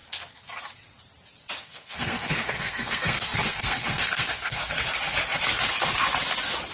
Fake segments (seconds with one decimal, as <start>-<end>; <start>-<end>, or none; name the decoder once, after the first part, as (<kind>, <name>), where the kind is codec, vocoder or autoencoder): 1.6-4.6 (codec, SNAC)